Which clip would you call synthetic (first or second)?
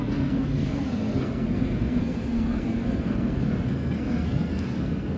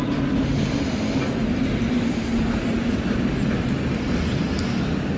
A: first